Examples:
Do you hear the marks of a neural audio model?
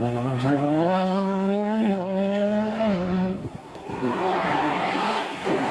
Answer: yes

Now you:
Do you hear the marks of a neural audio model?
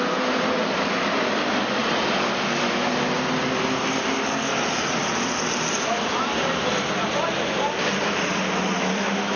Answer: no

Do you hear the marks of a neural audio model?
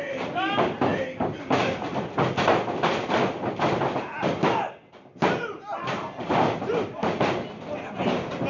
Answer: no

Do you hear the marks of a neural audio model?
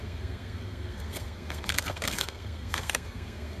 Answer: yes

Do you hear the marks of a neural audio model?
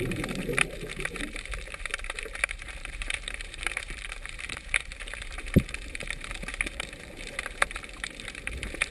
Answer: yes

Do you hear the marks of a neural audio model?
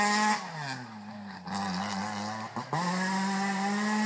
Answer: no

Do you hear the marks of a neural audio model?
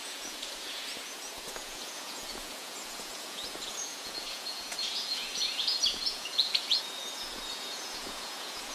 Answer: yes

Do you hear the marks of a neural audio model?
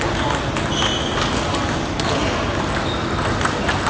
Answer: no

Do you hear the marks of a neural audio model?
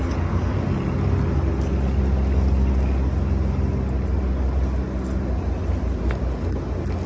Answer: no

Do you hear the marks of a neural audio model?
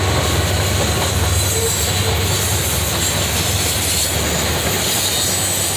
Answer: no